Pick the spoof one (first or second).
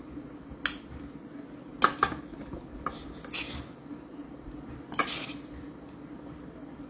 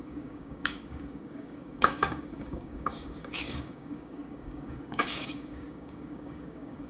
second